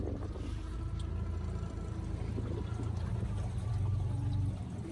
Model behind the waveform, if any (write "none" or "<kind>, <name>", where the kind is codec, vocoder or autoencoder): none